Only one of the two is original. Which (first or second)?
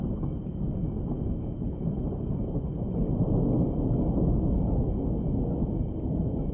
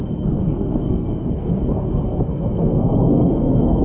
first